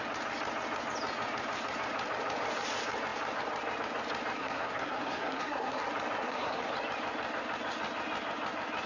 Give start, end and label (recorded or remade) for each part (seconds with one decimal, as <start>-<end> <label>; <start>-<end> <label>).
0.0-4.4 recorded; 4.4-5.8 remade; 5.8-6.2 recorded; 6.2-6.7 remade; 6.7-8.9 recorded